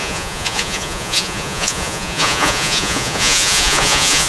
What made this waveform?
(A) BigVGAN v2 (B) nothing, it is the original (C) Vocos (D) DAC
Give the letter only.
C